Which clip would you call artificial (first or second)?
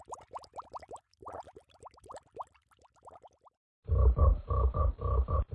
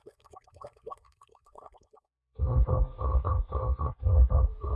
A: second